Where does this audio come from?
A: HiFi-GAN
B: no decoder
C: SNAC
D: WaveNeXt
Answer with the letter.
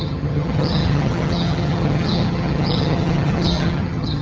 A